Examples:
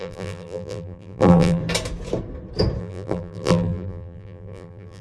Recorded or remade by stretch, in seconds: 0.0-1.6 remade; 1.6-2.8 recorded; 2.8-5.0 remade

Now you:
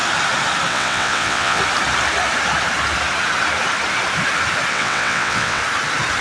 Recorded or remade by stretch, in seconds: 0.0-0.7 recorded; 0.7-1.6 remade; 1.6-4.7 recorded; 4.7-5.6 remade; 5.6-6.2 recorded

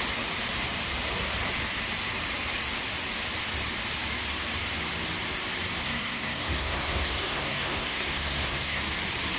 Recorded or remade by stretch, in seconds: 0.0-5.8 recorded; 5.8-8.8 remade; 8.8-9.4 recorded

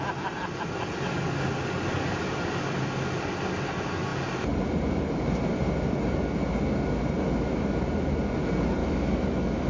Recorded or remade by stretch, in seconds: 0.0-8.8 recorded; 8.8-9.7 remade

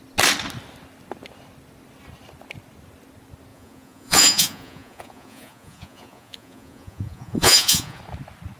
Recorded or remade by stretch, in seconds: 0.0-3.5 recorded; 3.5-8.0 remade; 8.0-8.6 recorded

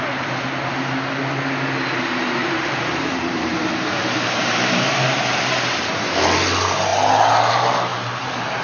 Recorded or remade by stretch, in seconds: 0.0-2.4 recorded; 2.4-5.2 remade; 5.2-7.9 recorded; 7.9-8.6 remade

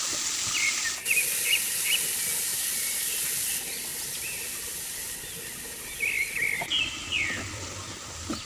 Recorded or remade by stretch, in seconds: 0.0-2.5 recorded; 2.5-3.2 remade; 3.2-3.9 recorded; 3.9-8.5 remade